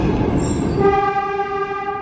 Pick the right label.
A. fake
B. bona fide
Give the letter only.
B